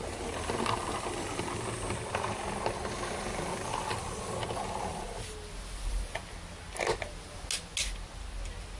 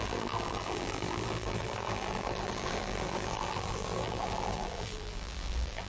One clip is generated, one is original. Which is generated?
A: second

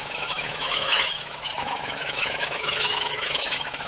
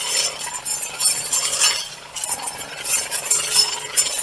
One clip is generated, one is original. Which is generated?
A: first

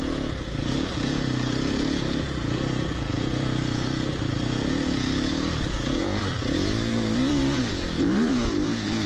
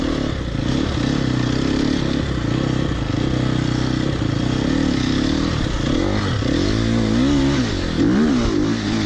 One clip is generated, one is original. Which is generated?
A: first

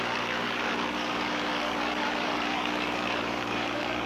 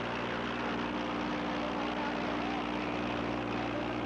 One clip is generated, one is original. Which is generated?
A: first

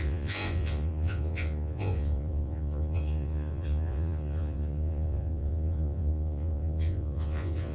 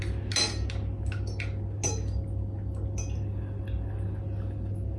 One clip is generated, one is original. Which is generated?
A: first